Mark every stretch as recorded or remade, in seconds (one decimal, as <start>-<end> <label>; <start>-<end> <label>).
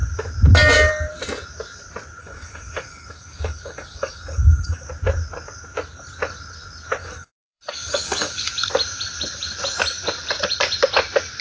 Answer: 0.0-2.2 recorded; 2.2-4.9 remade; 4.9-7.0 recorded; 7.0-8.5 remade; 8.5-11.4 recorded